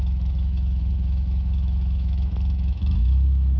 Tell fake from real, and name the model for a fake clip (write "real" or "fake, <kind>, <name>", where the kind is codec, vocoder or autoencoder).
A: fake, autoencoder, DAC-VAE